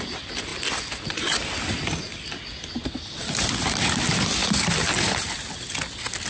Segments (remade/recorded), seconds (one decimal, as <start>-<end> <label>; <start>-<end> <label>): 0.0-6.3 recorded